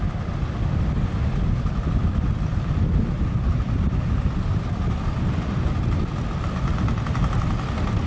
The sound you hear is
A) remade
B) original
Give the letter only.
B